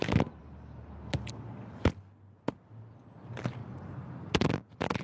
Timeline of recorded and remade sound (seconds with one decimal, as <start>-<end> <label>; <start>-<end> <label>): 0.0-3.6 recorded; 3.6-4.3 remade; 4.3-5.0 recorded